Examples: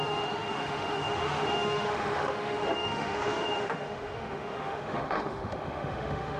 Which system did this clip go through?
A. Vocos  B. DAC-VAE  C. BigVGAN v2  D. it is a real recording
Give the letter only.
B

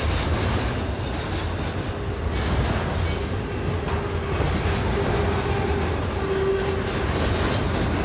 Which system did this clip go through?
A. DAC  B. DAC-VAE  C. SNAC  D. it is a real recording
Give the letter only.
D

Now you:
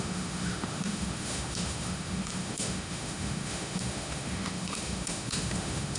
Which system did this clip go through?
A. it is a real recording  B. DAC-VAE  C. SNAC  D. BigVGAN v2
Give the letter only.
B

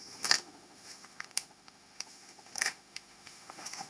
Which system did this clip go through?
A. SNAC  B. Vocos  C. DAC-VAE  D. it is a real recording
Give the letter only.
C